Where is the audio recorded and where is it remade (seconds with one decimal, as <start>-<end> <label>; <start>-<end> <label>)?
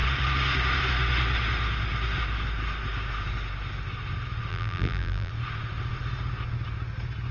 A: 0.0-4.5 recorded; 4.5-5.3 remade; 5.3-7.3 recorded